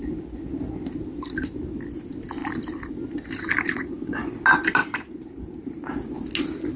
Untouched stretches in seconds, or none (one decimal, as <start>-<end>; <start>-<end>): 0.0-2.4; 2.9-4.8; 5.9-6.8